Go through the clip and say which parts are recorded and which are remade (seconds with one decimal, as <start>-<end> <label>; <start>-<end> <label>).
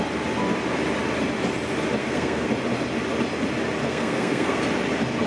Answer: 0.0-2.0 recorded; 2.0-2.5 remade; 2.5-3.8 recorded; 3.8-4.6 remade; 4.6-5.3 recorded